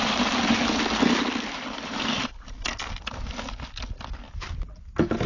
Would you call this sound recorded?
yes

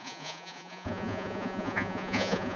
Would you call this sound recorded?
no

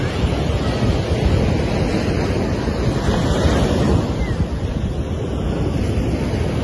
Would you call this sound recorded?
yes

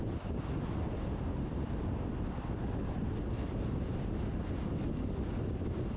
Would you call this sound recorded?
yes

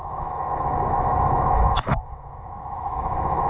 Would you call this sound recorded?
no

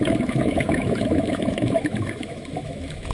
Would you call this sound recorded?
no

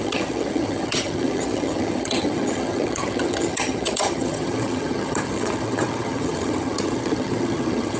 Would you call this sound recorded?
no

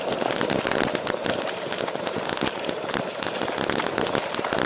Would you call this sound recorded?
yes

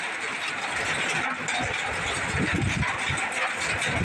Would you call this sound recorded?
yes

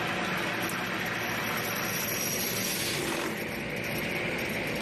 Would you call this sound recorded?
yes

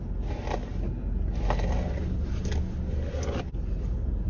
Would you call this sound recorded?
yes